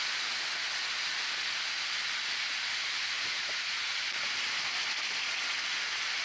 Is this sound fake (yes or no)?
no